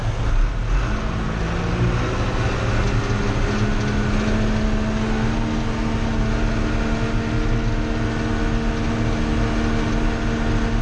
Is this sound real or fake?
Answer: real